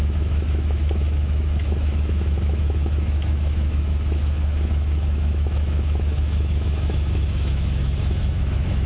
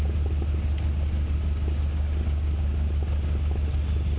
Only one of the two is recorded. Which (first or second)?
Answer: second